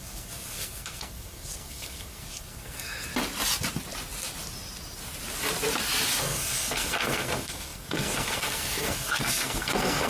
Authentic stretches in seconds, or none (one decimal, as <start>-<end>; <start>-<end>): 3.1-6.2